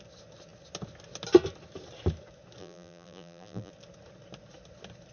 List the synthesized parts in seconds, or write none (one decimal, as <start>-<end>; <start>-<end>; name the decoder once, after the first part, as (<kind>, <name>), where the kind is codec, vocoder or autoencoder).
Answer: 2.6-3.7 (vocoder, BigVGAN v2)